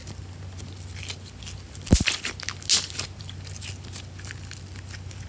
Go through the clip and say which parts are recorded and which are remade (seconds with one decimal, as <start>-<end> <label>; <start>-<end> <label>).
0.0-5.3 recorded